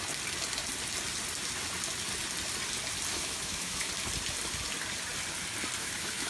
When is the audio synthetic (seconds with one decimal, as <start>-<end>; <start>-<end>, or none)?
3.1-3.9; 5.8-6.3